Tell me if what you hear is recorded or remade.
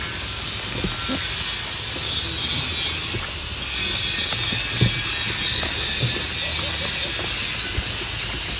recorded